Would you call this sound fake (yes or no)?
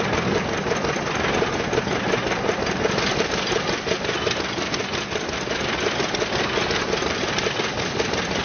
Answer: no